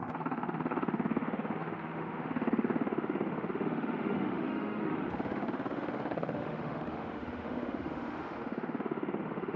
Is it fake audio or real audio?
fake